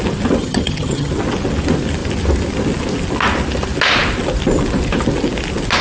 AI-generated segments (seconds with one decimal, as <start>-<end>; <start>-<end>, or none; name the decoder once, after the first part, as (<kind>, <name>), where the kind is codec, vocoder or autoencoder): 0.4-1.1 (vocoder, HiFi-GAN)